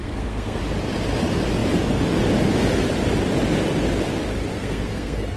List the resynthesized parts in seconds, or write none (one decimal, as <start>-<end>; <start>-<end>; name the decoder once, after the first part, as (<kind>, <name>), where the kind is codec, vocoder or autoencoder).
0.0-0.6 (codec, SNAC); 4.5-5.4